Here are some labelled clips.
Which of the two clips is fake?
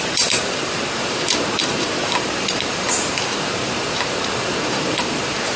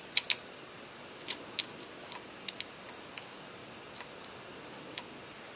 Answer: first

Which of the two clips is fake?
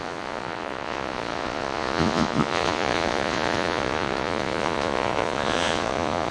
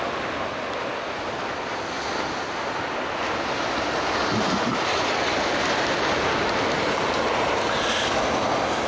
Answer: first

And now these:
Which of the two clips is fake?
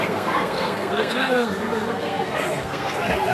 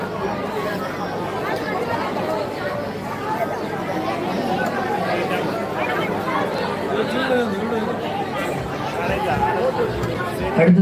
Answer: first